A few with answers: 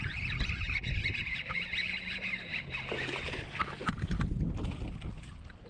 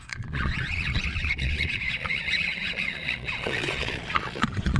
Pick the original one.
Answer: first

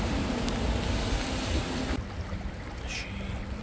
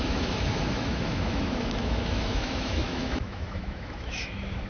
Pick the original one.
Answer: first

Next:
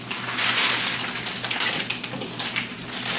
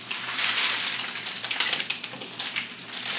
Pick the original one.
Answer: first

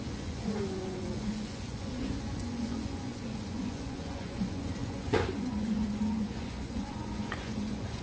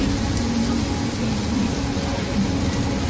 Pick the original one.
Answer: second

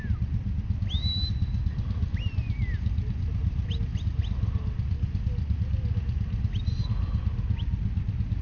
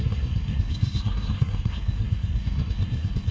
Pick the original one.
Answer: first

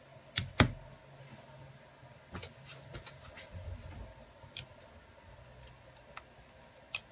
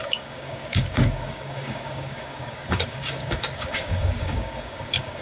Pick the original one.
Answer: first